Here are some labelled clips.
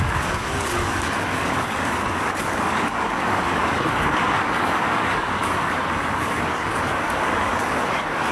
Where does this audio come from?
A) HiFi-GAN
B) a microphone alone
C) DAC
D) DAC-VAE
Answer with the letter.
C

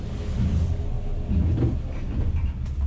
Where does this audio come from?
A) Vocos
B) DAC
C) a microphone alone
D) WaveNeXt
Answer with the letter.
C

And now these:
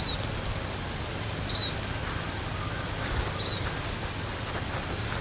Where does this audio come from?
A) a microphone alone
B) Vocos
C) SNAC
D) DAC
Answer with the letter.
A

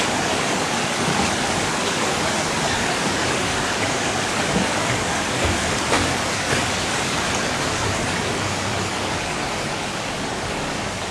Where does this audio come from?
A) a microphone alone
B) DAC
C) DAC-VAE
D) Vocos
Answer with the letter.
B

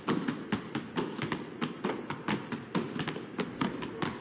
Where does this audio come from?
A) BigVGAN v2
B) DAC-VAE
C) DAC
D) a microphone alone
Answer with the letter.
D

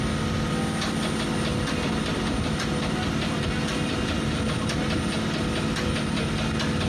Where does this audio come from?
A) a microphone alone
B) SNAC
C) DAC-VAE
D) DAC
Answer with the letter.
A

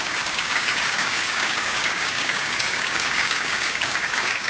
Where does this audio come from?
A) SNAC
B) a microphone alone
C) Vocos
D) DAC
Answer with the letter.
D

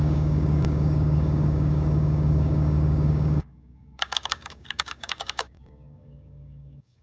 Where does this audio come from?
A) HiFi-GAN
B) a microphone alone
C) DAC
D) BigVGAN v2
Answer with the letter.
C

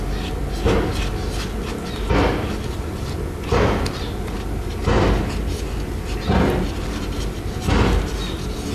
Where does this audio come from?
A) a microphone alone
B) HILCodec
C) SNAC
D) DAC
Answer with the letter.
A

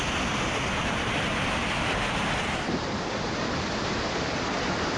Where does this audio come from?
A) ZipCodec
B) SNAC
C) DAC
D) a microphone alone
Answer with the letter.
D